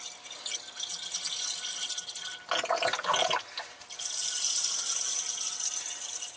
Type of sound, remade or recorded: recorded